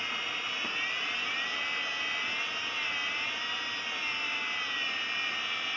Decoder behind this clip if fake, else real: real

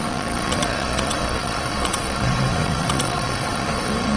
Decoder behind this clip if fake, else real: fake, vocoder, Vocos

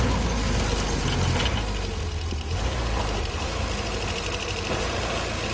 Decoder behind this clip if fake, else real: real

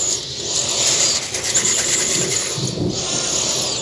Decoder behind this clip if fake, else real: real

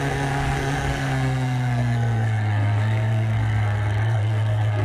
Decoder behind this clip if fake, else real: fake, codec, SNAC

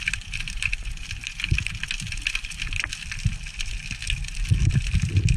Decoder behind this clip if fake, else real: real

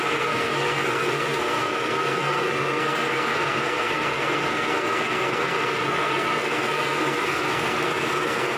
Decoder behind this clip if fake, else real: fake, codec, SNAC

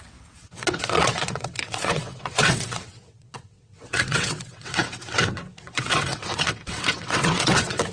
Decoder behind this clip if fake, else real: fake, vocoder, WaveNeXt